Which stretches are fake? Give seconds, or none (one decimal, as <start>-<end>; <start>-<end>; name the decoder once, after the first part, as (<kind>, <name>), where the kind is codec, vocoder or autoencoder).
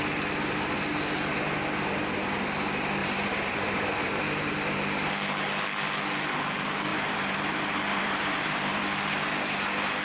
3.0-4.2 (vocoder, BigVGAN v2); 6.9-8.8